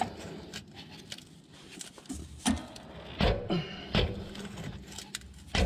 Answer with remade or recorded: recorded